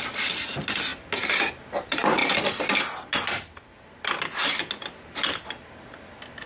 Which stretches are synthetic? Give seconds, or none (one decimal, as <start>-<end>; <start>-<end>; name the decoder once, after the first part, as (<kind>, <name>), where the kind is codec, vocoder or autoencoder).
none